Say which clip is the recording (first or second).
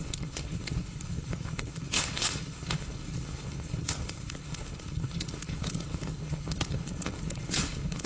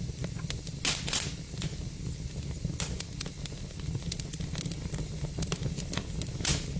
second